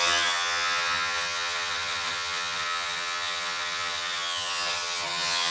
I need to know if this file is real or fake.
fake